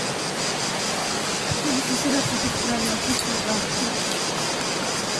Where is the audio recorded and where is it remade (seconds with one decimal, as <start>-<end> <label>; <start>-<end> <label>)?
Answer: 0.0-1.0 recorded; 1.0-1.6 remade; 1.6-5.2 recorded

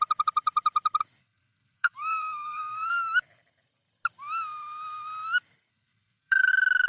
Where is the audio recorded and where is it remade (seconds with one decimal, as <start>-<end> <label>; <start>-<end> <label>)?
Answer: 0.0-1.2 recorded; 1.2-2.9 remade; 2.9-5.7 recorded; 5.7-6.5 remade; 6.5-6.9 recorded

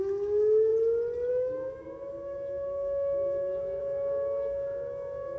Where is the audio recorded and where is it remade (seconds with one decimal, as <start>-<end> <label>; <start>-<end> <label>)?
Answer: 0.0-0.7 remade; 0.7-1.3 recorded; 1.3-5.4 remade

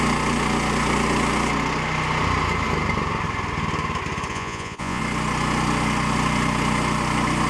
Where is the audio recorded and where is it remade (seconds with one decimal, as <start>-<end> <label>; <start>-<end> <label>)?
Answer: 0.0-4.3 recorded; 4.3-5.0 remade; 5.0-7.5 recorded

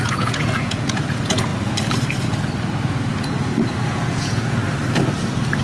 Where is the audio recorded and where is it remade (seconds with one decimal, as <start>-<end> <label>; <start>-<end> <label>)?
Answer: 0.0-1.5 remade; 1.5-3.9 recorded; 3.9-4.6 remade; 4.6-5.6 recorded

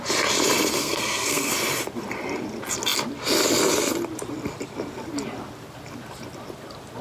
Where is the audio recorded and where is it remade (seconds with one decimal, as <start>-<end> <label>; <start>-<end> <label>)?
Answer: 0.0-0.8 recorded; 0.8-1.5 remade; 1.5-7.0 recorded

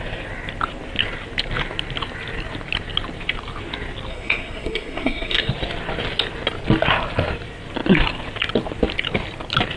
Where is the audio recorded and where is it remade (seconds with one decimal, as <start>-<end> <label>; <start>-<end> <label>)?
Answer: 0.0-4.1 recorded; 4.1-5.5 remade; 5.5-9.8 recorded

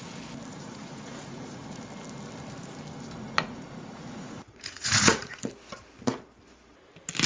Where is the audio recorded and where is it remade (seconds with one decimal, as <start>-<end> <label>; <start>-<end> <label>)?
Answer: 0.0-0.5 recorded; 0.5-1.8 remade; 1.8-3.2 recorded; 3.2-5.4 remade; 5.4-7.3 recorded